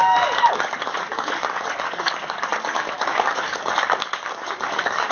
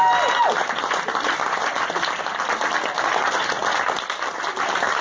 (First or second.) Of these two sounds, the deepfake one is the first